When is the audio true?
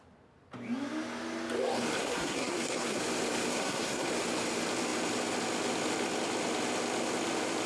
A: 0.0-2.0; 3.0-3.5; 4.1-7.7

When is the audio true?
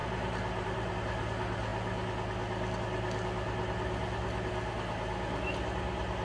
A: 0.9-6.2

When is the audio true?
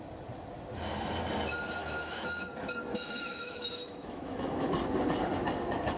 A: 0.0-1.8; 2.5-2.9; 4.7-6.0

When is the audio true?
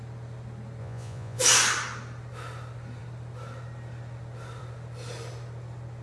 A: 0.0-0.8; 1.4-6.0